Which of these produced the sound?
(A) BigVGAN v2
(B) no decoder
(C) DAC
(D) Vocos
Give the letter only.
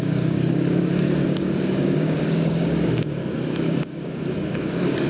C